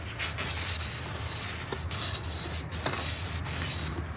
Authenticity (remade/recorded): recorded